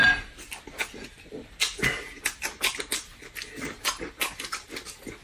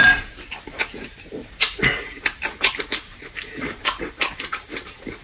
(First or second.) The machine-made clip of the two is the second